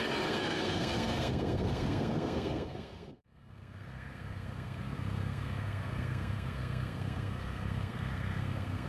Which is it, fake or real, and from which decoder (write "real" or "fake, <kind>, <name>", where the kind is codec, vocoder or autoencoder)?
fake, codec, SNAC